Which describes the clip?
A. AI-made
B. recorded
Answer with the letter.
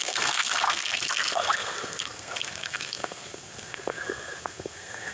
A